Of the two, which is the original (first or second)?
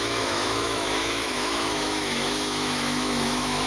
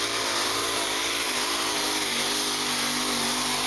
second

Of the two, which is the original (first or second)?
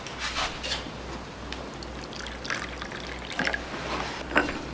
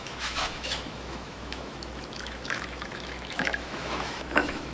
first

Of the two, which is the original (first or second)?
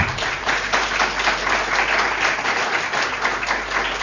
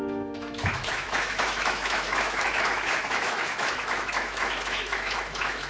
first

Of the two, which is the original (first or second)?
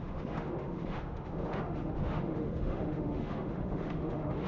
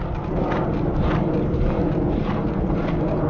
second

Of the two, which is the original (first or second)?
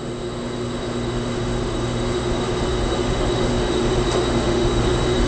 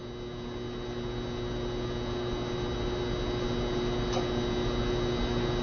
second